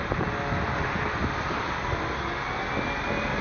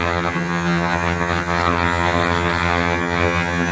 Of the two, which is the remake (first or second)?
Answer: second